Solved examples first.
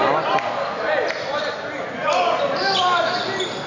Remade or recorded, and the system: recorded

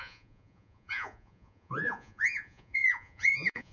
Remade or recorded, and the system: remade, vocoder, Vocos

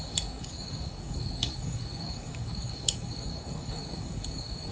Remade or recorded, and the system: remade, codec, DAC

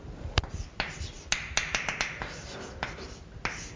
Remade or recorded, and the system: recorded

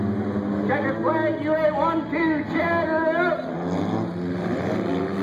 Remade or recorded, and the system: recorded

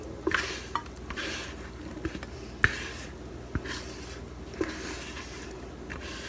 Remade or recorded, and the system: recorded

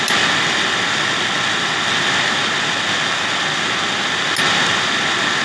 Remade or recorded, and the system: recorded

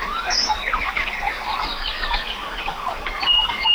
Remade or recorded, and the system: remade, codec, DAC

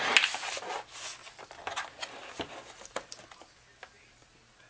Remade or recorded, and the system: recorded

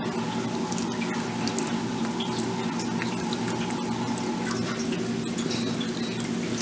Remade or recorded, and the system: recorded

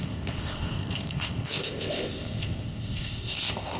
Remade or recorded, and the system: remade, codec, ZipCodec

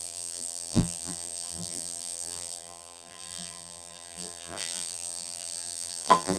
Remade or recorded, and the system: remade, vocoder, BigVGAN v2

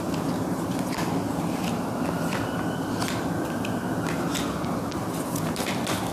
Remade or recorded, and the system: recorded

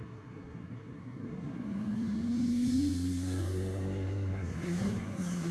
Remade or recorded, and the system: remade, codec, SNAC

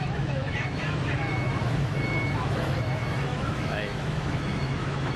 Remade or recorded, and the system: remade, autoencoder, DAC-VAE